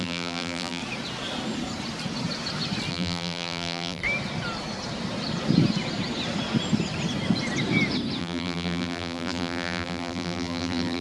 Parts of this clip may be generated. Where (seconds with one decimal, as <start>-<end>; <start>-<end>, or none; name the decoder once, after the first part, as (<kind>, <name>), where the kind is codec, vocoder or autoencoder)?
0.0-0.8 (vocoder, BigVGAN v2); 2.9-4.0; 8.2-11.0